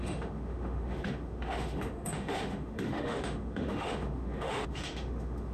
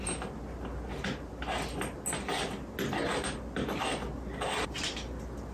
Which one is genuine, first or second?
second